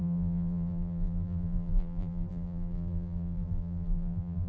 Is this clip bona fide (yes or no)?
no